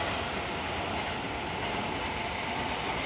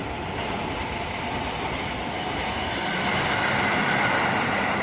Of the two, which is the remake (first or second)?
second